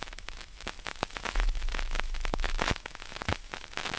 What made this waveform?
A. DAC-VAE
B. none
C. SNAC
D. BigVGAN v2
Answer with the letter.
A